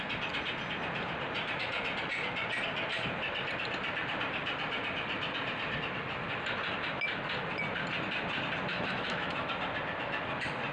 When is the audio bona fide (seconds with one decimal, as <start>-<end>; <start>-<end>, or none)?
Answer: 0.0-8.7; 9.5-10.7